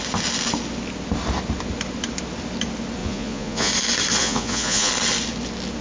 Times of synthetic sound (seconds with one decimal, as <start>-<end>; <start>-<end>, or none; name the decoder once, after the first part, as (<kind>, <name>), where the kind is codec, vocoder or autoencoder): 3.0-3.7 (vocoder, Vocos); 4.2-4.9